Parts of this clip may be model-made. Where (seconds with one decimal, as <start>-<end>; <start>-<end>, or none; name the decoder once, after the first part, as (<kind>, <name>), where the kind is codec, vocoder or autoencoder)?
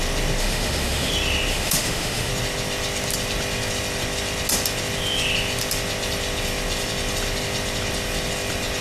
0.4-1.1 (autoencoder, DAC-VAE); 1.5-2.3